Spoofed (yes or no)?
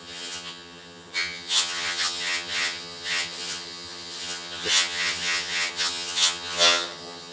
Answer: yes